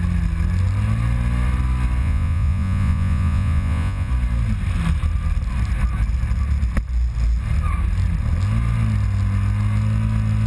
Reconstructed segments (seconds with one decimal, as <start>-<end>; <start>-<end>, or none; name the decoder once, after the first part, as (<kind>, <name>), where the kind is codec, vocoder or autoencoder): 2.0-4.1 (vocoder, Vocos)